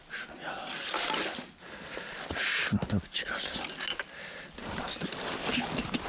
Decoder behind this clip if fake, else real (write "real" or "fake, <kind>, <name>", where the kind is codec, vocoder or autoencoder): real